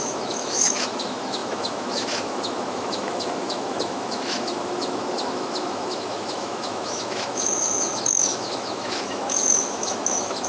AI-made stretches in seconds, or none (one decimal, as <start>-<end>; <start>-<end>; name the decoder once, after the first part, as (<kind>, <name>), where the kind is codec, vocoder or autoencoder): 0.0-10.5 (autoencoder, DAC-VAE)